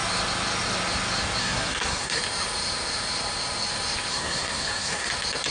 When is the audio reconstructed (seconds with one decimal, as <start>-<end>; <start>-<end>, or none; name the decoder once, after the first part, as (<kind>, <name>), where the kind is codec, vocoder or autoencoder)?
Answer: 1.4-2.2 (codec, SNAC); 4.1-5.1